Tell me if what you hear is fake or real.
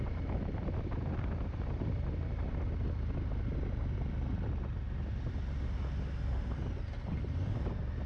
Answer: real